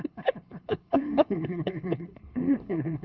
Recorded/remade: remade